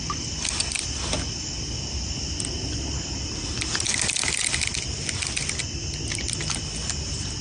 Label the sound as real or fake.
real